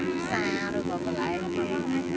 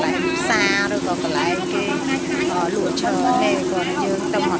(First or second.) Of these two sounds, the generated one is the first